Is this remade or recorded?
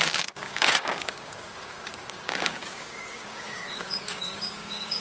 remade